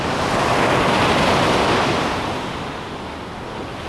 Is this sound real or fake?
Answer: real